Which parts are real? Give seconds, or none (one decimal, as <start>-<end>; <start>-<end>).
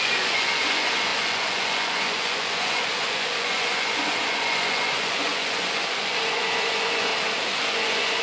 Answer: 7.1-7.6